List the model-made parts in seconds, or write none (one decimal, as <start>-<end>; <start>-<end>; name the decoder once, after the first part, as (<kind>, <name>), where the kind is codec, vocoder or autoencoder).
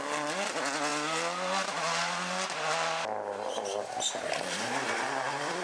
none